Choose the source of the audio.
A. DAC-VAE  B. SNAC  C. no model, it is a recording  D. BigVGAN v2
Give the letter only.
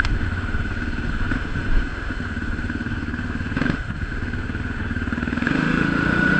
A